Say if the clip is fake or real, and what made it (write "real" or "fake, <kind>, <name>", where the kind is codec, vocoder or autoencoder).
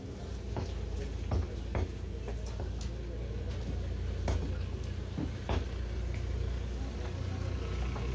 real